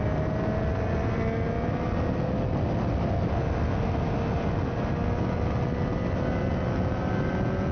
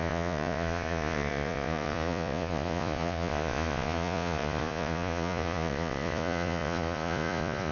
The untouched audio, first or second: first